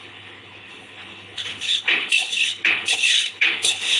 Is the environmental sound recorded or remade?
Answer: remade